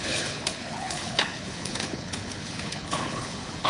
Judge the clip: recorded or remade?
remade